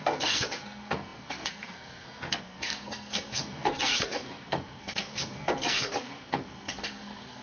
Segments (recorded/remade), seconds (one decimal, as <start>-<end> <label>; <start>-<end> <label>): 0.0-7.4 remade